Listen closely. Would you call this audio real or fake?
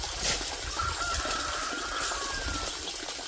real